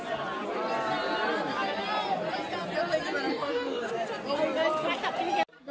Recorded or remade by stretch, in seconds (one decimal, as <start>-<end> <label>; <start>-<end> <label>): 0.0-3.3 recorded; 3.3-3.9 remade; 3.9-5.7 recorded